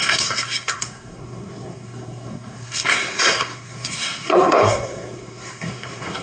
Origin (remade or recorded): remade